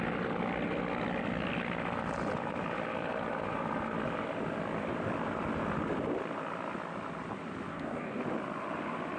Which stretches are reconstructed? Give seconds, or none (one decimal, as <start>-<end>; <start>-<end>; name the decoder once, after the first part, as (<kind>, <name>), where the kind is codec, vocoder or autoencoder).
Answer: 7.7-8.2 (codec, DAC)